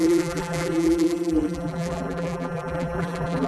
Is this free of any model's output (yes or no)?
no